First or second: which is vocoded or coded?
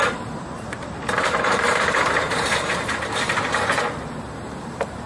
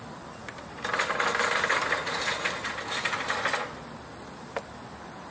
first